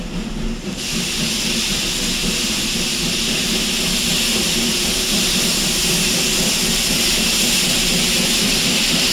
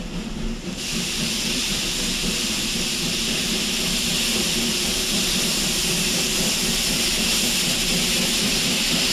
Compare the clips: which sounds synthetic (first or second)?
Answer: second